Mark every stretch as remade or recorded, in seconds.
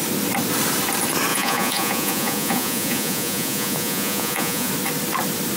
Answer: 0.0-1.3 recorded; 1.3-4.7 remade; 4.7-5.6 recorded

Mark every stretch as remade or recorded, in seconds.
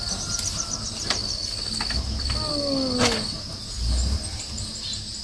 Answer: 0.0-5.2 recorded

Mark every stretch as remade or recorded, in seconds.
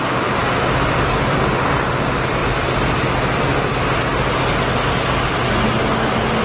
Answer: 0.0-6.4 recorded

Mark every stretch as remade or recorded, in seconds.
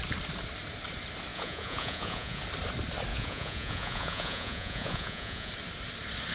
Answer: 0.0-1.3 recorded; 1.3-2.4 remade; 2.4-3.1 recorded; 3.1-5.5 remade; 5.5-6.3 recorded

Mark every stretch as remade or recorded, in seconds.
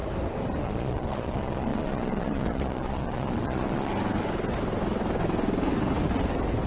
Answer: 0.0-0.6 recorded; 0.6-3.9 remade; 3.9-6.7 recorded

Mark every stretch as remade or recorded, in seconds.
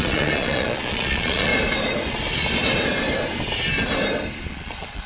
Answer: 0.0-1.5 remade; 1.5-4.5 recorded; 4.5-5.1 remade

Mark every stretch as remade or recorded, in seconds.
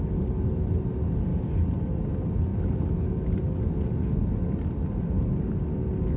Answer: 0.0-6.2 recorded